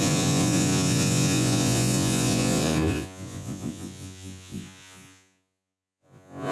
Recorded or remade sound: remade